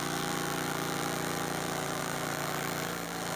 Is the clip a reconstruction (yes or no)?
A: yes